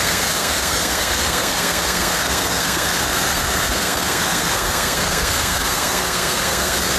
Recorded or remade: remade